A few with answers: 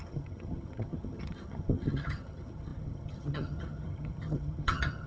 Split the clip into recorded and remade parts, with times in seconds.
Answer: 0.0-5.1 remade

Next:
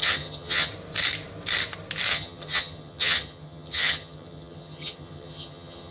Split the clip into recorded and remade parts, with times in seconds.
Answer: 0.0-0.7 remade; 0.7-2.1 recorded; 2.1-5.9 remade

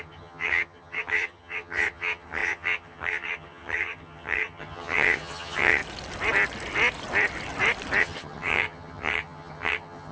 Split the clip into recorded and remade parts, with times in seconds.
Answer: 0.0-5.8 remade; 5.8-8.0 recorded; 8.0-10.1 remade

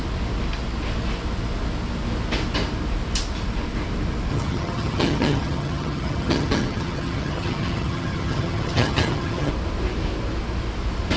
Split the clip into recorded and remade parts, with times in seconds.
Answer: 0.0-4.3 recorded; 4.3-9.5 remade; 9.5-11.2 recorded

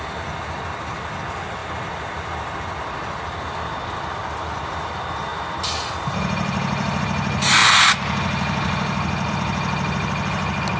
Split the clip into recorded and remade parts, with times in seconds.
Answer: 0.0-10.8 recorded

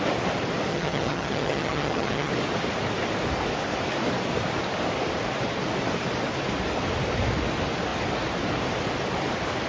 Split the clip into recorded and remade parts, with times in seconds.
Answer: 0.0-0.7 recorded; 0.7-2.3 remade; 2.3-9.7 recorded